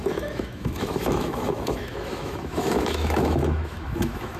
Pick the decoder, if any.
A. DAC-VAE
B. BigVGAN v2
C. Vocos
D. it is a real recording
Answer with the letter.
A